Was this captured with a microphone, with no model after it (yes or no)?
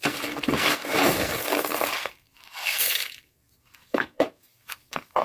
no